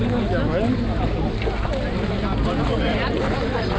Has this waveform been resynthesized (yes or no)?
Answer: no